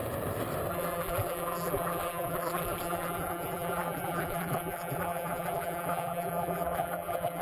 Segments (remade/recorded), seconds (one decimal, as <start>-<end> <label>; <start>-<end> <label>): 0.0-0.7 recorded; 0.7-7.4 remade